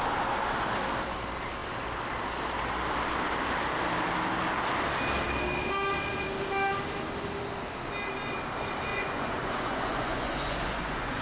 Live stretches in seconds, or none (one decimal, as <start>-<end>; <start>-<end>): 0.0-8.9